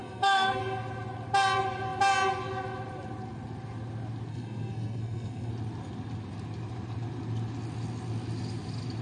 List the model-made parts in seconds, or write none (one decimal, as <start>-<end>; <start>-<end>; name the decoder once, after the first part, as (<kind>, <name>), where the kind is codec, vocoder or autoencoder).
0.0-0.6 (codec, SNAC); 4.3-5.5